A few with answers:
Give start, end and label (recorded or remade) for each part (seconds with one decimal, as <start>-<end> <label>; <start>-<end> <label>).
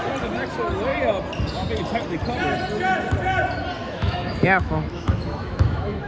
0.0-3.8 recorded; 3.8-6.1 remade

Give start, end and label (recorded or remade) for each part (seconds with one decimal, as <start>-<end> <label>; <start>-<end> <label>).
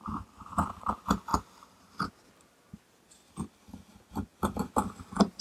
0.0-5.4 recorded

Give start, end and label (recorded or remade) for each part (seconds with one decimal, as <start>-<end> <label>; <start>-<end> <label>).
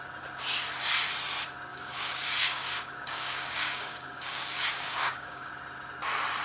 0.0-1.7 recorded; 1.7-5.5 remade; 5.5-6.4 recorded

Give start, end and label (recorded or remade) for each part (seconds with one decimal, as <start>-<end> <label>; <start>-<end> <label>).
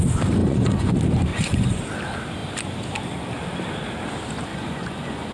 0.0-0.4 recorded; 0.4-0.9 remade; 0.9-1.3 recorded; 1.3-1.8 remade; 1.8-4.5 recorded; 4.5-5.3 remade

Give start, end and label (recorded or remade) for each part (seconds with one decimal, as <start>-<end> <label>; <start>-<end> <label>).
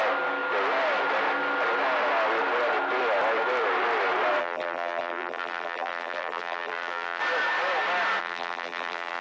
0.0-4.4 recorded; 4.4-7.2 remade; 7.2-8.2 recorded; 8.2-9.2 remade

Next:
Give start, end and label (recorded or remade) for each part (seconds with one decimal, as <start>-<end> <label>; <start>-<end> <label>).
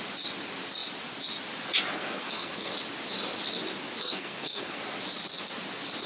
0.0-1.9 recorded; 1.9-2.7 remade; 2.7-4.0 recorded; 4.0-4.8 remade; 4.8-6.1 recorded